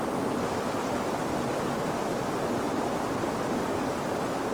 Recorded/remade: recorded